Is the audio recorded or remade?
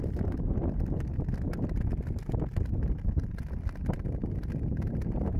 recorded